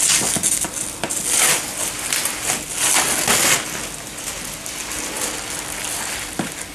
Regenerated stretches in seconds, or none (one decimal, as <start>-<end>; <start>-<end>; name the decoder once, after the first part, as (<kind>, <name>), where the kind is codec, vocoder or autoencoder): none